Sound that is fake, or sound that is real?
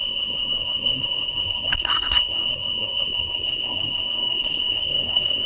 fake